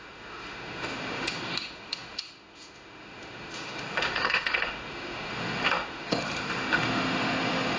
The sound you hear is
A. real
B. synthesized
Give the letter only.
B